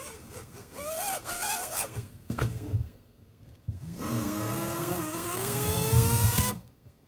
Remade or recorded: remade